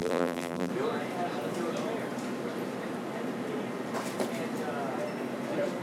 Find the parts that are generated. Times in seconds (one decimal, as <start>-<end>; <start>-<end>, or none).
0.0-0.7